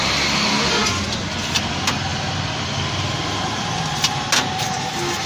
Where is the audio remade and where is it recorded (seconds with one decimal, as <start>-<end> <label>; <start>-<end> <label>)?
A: 0.0-5.3 recorded